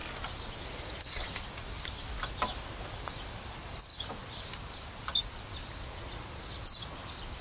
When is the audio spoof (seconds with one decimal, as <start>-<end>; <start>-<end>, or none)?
none

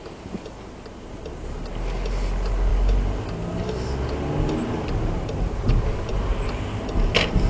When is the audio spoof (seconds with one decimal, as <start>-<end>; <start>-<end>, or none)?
none

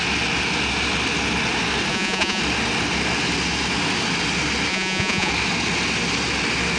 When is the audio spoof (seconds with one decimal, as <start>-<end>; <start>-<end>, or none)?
1.9-2.4; 4.7-5.3

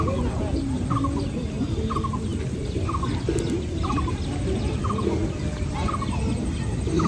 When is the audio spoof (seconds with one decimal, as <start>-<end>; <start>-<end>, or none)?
none

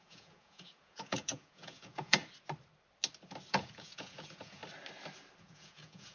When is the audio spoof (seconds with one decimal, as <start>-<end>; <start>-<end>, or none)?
0.0-2.2; 3.5-4.6; 5.4-6.1

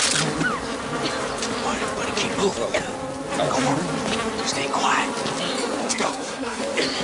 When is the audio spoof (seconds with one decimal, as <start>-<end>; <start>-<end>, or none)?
5.8-6.6